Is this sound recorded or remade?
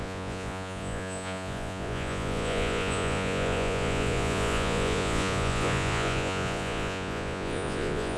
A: remade